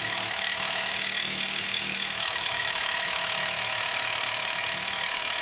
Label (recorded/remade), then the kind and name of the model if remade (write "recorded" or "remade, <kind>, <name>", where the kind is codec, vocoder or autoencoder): remade, autoencoder, DAC-VAE